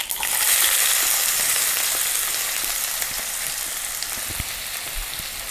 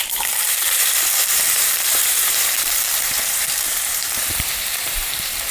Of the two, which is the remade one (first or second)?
second